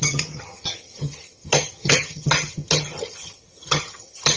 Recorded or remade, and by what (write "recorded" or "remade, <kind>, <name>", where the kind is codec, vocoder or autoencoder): remade, vocoder, HiFi-GAN